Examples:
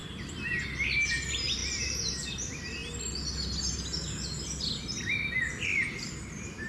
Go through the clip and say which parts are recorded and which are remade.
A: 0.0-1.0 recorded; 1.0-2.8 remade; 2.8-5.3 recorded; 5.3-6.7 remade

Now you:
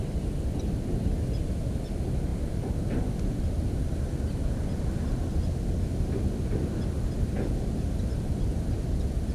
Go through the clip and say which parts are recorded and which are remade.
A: 0.0-9.3 recorded

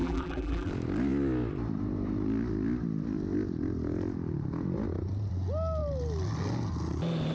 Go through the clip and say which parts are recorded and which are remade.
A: 0.0-0.7 remade; 0.7-7.3 recorded

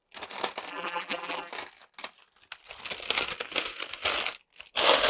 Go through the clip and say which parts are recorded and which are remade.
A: 0.0-0.7 recorded; 0.7-1.5 remade; 1.5-5.1 recorded

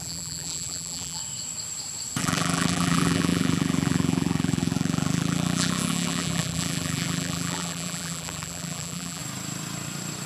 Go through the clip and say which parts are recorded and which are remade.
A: 0.0-1.2 remade; 1.2-2.2 recorded; 2.2-9.2 remade; 9.2-10.3 recorded

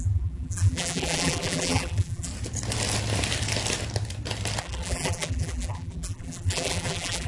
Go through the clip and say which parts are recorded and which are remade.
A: 0.0-2.3 remade; 2.3-4.6 recorded; 4.6-7.3 remade